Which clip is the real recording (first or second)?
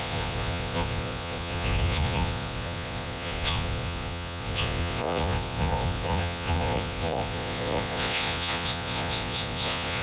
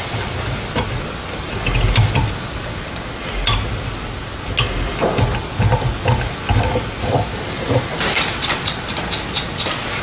second